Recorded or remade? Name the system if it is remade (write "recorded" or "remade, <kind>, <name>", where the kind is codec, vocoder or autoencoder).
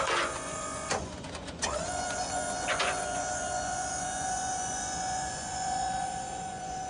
remade, vocoder, Vocos